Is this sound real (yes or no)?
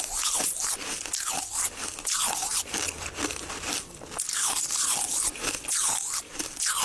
yes